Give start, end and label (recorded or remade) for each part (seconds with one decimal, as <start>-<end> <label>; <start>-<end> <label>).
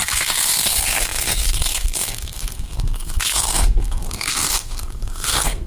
0.0-5.7 remade